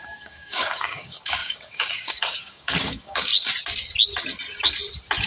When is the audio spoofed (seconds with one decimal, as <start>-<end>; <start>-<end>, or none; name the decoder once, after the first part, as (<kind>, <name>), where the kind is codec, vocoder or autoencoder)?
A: 0.0-3.3 (codec, DAC)